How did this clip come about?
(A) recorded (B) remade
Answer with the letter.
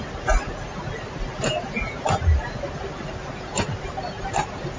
A